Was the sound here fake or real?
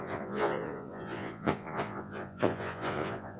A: fake